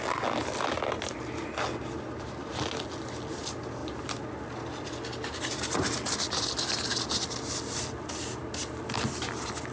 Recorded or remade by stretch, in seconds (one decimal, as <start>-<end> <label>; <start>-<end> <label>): 0.0-9.7 recorded